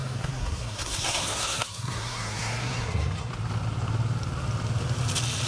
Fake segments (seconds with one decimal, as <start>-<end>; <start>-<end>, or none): 0.0-3.3